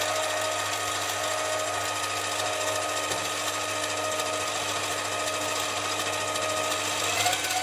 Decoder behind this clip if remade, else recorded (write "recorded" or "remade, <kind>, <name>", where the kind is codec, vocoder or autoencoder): recorded